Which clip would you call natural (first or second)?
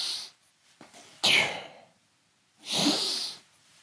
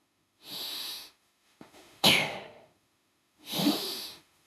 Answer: first